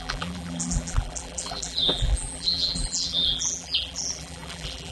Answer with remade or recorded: remade